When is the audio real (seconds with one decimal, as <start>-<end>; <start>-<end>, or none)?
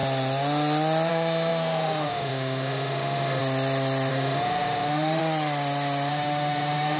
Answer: 0.0-1.1; 3.4-4.1; 5.2-6.1